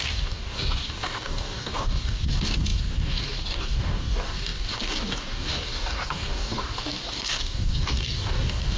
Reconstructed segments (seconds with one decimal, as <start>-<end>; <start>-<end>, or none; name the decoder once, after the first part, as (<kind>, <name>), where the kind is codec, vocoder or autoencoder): 0.0-8.8 (codec, DAC)